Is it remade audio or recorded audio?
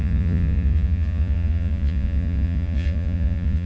remade